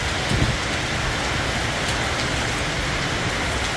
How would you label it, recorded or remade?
recorded